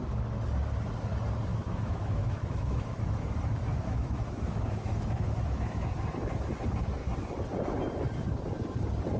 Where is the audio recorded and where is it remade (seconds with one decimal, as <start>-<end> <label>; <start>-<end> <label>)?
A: 0.0-1.5 recorded; 1.5-5.9 remade; 5.9-9.2 recorded